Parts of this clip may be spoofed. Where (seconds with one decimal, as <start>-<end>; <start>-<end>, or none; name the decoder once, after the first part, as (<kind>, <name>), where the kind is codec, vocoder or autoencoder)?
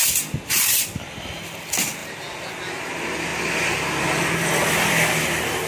none